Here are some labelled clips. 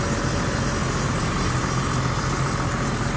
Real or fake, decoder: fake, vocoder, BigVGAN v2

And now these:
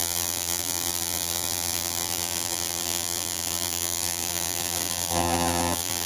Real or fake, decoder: fake, vocoder, BigVGAN v2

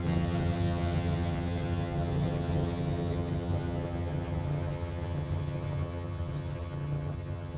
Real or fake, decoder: fake, vocoder, HiFi-GAN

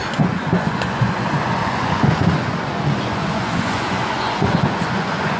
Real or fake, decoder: fake, vocoder, Vocos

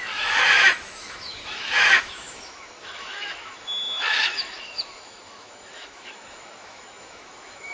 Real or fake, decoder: fake, autoencoder, DAC-VAE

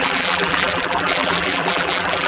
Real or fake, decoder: fake, vocoder, BigVGAN v2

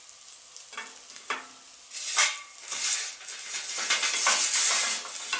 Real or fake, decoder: real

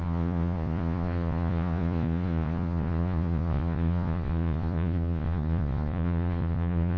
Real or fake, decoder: fake, vocoder, Vocos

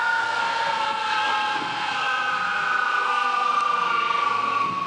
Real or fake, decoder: fake, codec, SNAC